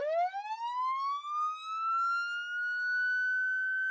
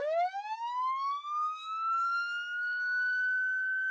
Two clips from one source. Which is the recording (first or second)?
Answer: first